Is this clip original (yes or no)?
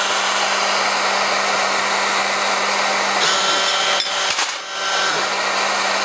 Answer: yes